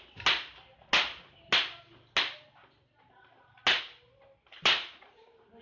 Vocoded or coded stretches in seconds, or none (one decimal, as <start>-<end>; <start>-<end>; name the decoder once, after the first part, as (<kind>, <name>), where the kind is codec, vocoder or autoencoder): none